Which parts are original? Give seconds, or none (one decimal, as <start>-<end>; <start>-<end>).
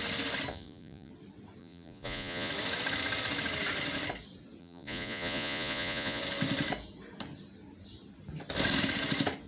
0.0-0.5; 1.1-1.6; 2.5-4.6; 6.2-9.5